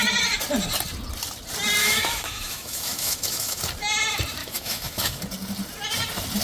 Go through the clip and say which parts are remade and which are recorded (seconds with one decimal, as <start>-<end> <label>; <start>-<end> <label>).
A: 0.0-1.8 recorded; 1.8-3.6 remade; 3.6-4.4 recorded; 4.4-5.2 remade; 5.2-6.4 recorded